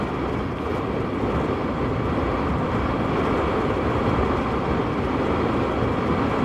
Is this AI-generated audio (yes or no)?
no